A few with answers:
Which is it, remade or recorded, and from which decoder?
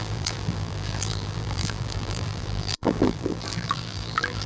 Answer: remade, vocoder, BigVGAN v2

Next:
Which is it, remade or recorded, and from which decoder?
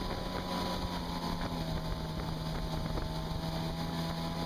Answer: recorded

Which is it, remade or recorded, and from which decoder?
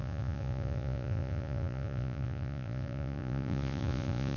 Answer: remade, vocoder, Vocos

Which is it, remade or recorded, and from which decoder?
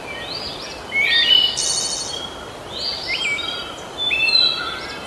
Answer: recorded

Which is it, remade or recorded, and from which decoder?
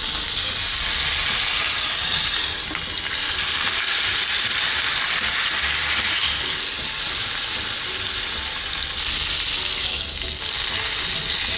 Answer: recorded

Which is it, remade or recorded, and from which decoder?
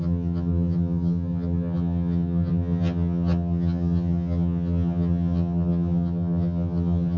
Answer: remade, vocoder, HiFi-GAN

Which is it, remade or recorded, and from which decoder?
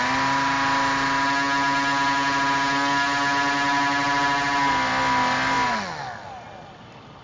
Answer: recorded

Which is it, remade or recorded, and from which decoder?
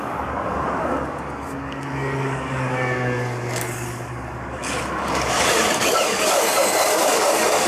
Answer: remade, codec, DAC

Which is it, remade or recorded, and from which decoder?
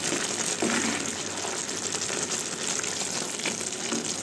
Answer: recorded